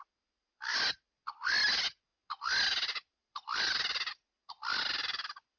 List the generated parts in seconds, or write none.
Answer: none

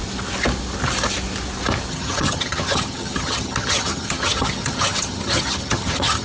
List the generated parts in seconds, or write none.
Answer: 1.9-6.2 (vocoder, HiFi-GAN)